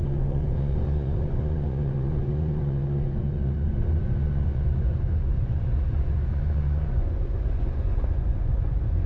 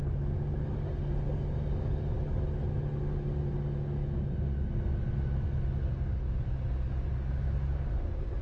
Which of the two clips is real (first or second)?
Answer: second